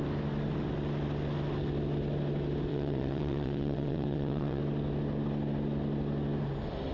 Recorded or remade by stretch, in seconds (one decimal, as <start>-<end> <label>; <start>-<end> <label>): 0.0-2.7 recorded; 2.7-4.6 remade; 4.6-6.9 recorded